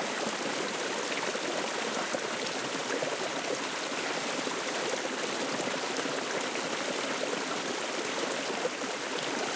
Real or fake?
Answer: real